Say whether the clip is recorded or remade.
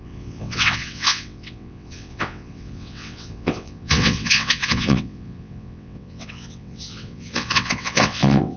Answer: remade